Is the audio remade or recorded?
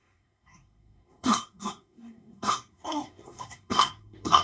remade